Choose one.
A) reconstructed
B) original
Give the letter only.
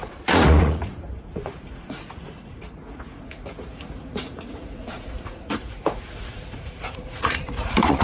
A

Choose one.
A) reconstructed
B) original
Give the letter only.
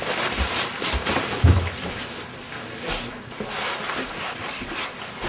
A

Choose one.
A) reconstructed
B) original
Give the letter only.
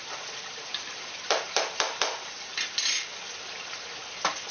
B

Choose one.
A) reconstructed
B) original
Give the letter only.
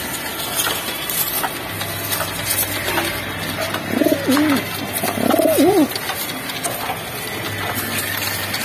B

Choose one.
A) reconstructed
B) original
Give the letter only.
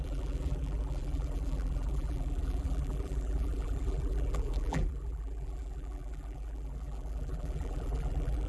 A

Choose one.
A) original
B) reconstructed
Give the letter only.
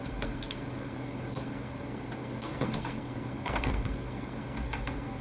B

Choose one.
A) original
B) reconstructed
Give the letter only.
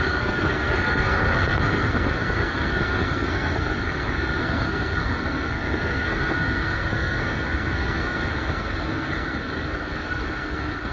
B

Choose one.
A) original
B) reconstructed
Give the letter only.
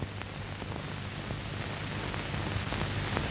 A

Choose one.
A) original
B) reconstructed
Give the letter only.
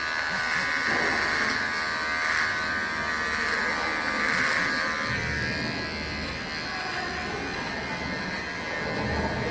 A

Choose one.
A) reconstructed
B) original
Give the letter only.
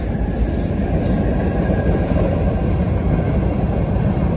B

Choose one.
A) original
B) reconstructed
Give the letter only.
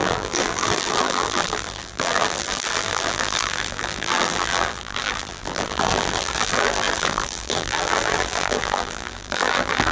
B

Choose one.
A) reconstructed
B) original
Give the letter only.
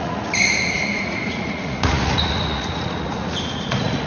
A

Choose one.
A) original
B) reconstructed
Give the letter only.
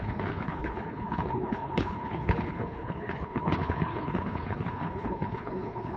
B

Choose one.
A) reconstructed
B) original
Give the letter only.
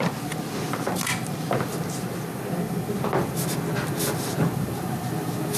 B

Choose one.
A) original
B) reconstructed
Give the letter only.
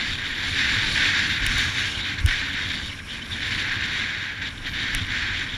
A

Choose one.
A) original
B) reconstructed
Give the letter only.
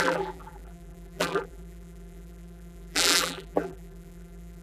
B